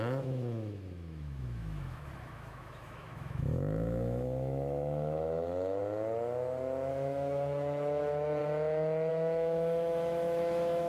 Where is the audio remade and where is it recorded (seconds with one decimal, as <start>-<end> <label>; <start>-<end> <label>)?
0.0-5.8 remade; 5.8-6.9 recorded; 6.9-8.4 remade; 8.4-9.1 recorded; 9.1-10.9 remade